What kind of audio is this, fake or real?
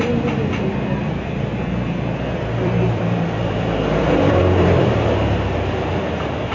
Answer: fake